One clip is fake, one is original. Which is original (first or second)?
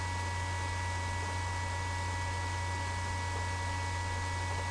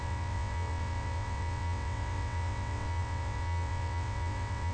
first